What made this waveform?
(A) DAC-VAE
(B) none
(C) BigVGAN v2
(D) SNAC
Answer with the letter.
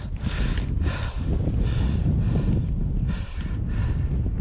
B